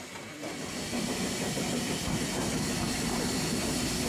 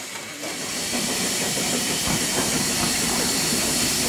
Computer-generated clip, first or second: second